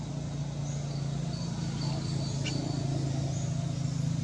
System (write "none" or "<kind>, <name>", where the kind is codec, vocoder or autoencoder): none